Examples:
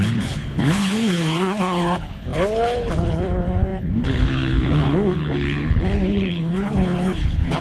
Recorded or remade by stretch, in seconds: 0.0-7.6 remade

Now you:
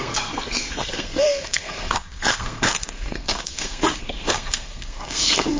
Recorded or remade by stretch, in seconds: 0.0-5.6 remade

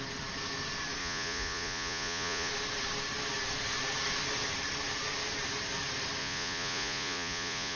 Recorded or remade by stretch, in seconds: 0.0-1.0 recorded; 1.0-2.5 remade; 2.5-6.2 recorded; 6.2-7.8 remade

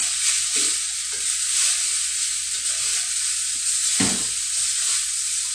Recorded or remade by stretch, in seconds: 0.0-5.5 recorded

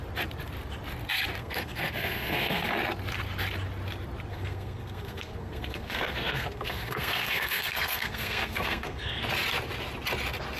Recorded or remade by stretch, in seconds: 0.0-1.4 recorded; 1.4-2.7 remade; 2.7-4.3 recorded; 4.3-9.2 remade; 9.2-10.6 recorded

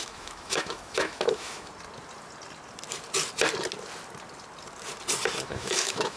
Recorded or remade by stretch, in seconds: 0.0-1.7 remade; 1.7-5.4 recorded; 5.4-6.2 remade

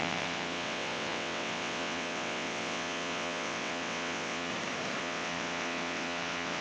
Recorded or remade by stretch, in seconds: 0.0-4.5 remade; 4.5-5.0 recorded; 5.0-6.6 remade

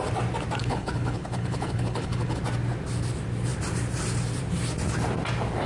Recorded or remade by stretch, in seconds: 0.0-0.6 recorded; 0.6-2.4 remade; 2.4-5.7 recorded